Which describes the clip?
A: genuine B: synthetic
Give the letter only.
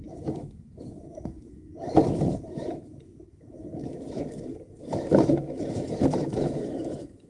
B